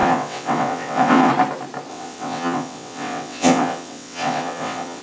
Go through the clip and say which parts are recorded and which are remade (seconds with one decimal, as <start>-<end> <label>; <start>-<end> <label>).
0.0-1.3 remade; 1.3-1.9 recorded; 1.9-5.0 remade